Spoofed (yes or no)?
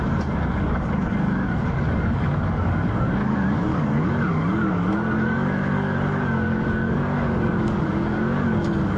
yes